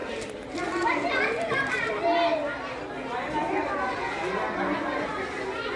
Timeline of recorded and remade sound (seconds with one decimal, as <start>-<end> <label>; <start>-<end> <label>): 0.0-2.0 remade; 2.0-5.8 recorded